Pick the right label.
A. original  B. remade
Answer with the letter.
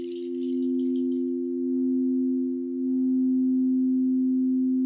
A